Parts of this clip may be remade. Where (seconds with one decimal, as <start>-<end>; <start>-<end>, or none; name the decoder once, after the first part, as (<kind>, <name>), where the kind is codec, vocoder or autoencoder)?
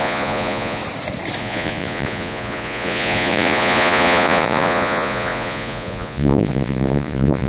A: 0.0-0.8 (vocoder, Vocos); 1.4-7.5